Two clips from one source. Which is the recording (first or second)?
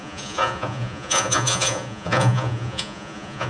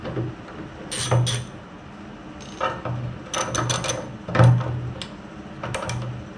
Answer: second